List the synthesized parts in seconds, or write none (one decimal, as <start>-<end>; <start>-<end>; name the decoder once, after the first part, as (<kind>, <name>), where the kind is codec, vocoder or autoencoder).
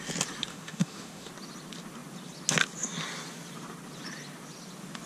0.5-1.3 (autoencoder, DAC-VAE)